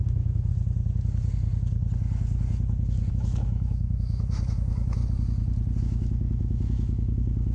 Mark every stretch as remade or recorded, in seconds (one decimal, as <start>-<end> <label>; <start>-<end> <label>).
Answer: 0.0-0.5 remade; 0.5-3.1 recorded; 3.1-5.0 remade; 5.0-5.8 recorded; 5.8-7.5 remade